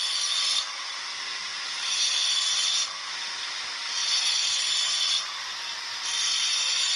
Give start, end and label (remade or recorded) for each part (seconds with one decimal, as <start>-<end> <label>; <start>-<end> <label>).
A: 0.0-7.0 recorded